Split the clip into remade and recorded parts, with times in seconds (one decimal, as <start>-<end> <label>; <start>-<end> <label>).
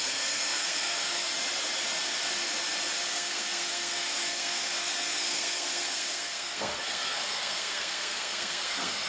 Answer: 0.0-1.3 remade; 1.3-3.1 recorded; 3.1-9.1 remade